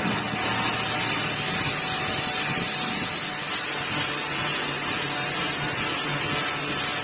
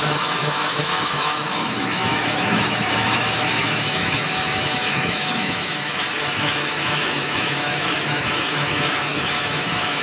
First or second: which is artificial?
second